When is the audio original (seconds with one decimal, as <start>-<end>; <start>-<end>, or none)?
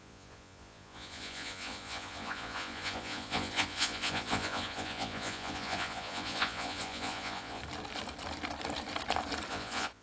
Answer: 7.6-9.5